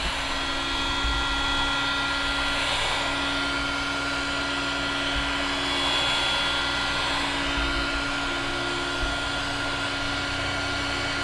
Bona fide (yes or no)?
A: yes